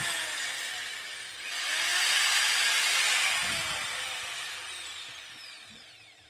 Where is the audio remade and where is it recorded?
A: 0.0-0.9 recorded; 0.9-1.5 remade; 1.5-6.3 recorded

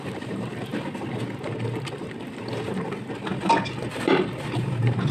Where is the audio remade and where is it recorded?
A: 0.0-0.7 remade; 0.7-3.8 recorded; 3.8-5.1 remade

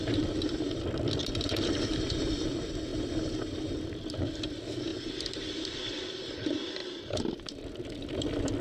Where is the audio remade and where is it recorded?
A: 0.0-2.9 remade; 2.9-3.7 recorded; 3.7-4.9 remade; 4.9-5.5 recorded; 5.5-6.8 remade; 6.8-7.8 recorded; 7.8-8.6 remade

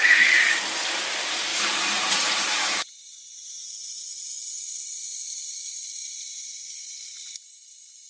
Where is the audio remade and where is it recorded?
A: 0.0-1.5 recorded; 1.5-3.7 remade; 3.7-6.0 recorded; 6.0-6.6 remade; 6.6-8.1 recorded

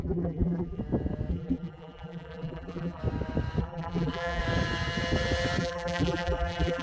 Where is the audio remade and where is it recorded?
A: 0.0-0.8 remade; 0.8-1.3 recorded; 1.3-3.0 remade; 3.0-3.6 recorded; 3.6-4.4 remade; 4.4-5.6 recorded; 5.6-6.8 remade

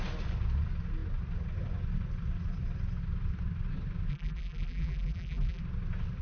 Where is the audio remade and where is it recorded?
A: 0.0-4.1 recorded; 4.1-5.6 remade; 5.6-6.2 recorded

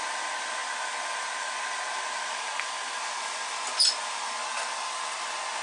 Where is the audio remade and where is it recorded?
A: 0.0-5.6 recorded